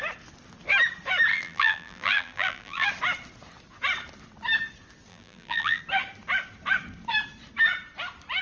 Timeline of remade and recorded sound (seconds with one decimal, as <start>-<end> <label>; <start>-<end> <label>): 0.0-1.3 recorded; 1.3-2.9 remade; 2.9-5.1 recorded; 5.1-5.8 remade; 5.8-8.4 recorded

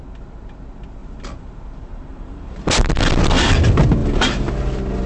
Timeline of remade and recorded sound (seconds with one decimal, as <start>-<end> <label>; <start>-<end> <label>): 0.0-1.0 recorded; 1.0-3.5 remade; 3.5-4.0 recorded; 4.0-4.5 remade; 4.5-5.1 recorded

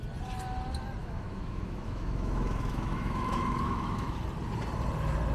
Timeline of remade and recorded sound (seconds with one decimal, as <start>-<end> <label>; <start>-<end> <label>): 0.0-1.0 recorded; 1.0-4.2 remade; 4.2-5.3 recorded

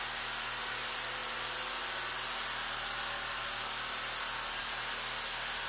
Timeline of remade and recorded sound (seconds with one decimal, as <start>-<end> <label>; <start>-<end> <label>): 0.0-5.7 recorded

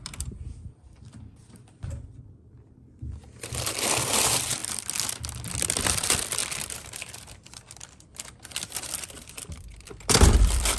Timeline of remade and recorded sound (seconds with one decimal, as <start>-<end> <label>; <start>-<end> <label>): 0.0-4.6 remade; 4.6-5.6 recorded; 5.6-10.8 remade

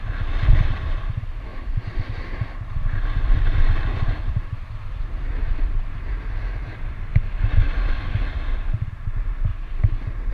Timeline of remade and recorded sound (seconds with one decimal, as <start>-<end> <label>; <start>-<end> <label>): 0.0-1.5 recorded; 1.5-4.9 remade; 4.9-10.3 recorded

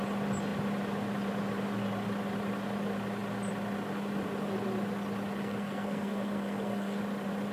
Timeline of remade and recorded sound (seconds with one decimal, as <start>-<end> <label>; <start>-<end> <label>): 0.0-5.4 recorded; 5.4-7.0 remade; 7.0-7.5 recorded